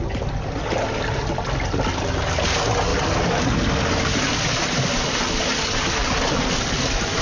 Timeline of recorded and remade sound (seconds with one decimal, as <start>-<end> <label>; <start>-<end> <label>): 0.0-7.2 recorded